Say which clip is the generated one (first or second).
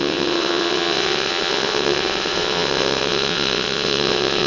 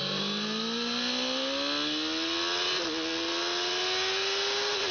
first